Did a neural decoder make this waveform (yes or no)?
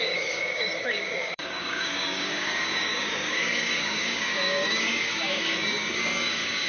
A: yes